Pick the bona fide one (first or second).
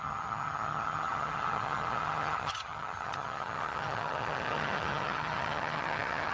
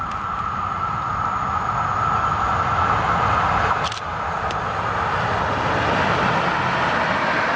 second